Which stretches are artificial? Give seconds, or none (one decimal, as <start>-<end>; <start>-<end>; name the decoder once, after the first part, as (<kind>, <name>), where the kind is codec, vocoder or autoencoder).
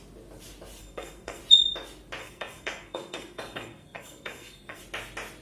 0.8-1.4 (codec, SNAC); 2.2-4.8